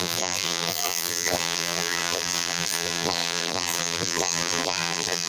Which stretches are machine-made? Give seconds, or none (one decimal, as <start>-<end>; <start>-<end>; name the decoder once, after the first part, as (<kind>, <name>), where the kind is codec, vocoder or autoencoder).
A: 0.0-5.3 (vocoder, BigVGAN v2)